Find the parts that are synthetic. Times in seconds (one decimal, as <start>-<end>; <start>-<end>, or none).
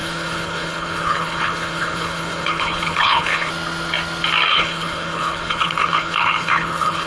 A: 0.0-3.5; 4.5-7.1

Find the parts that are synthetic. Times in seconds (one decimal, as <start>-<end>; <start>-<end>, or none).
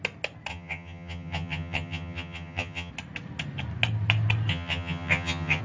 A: 0.5-2.9; 4.5-5.6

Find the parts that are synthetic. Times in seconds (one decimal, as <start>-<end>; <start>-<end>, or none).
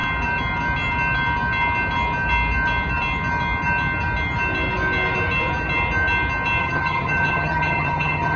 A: 6.6-8.4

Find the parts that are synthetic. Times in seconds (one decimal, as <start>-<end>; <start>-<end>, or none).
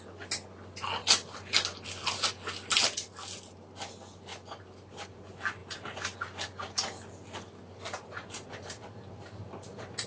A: 4.3-5.1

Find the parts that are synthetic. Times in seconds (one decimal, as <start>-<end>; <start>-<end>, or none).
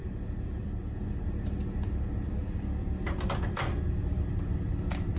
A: 0.0-0.7; 2.4-5.2